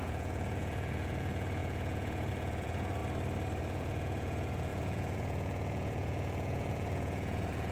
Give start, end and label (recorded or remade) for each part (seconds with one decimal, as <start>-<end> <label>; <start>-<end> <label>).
0.0-3.0 remade; 3.0-3.6 recorded; 3.6-7.7 remade

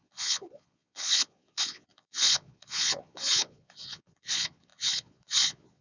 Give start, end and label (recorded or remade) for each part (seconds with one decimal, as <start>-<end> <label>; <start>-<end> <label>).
0.0-5.8 remade

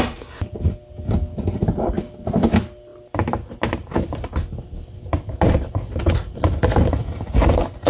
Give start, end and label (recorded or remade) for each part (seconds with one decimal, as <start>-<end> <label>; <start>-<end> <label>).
0.0-7.9 recorded

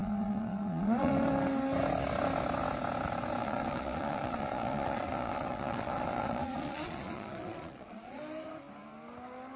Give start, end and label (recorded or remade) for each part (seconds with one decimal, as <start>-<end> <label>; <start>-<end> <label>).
0.0-1.1 remade; 1.1-3.4 recorded; 3.4-8.2 remade; 8.2-9.6 recorded

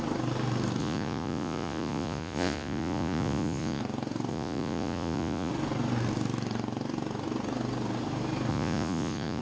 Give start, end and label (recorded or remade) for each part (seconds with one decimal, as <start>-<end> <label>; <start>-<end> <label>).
0.0-0.8 recorded; 0.8-3.8 remade; 3.8-4.3 recorded; 4.3-5.5 remade; 5.5-8.5 recorded; 8.5-9.4 remade